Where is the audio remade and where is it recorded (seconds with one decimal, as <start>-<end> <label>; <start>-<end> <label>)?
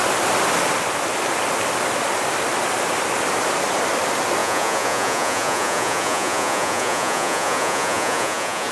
0.0-4.4 recorded; 4.4-8.7 remade